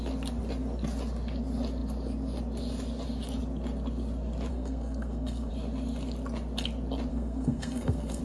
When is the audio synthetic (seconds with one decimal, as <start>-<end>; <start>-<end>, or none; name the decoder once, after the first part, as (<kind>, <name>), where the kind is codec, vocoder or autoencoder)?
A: 4.5-5.5 (codec, SNAC); 7.1-8.2